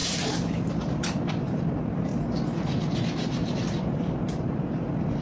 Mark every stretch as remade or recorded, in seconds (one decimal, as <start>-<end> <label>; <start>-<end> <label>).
0.0-0.7 recorded; 0.7-2.1 remade; 2.1-3.8 recorded; 3.8-5.2 remade